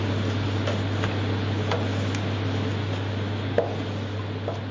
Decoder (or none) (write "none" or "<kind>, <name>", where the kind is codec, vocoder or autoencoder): none